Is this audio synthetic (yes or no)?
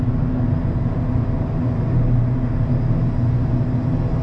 no